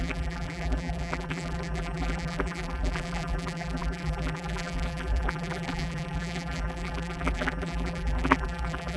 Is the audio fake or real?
fake